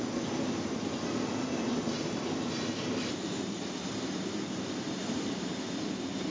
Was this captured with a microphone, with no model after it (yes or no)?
yes